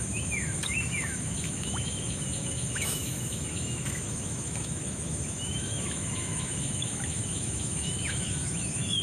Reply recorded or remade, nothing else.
remade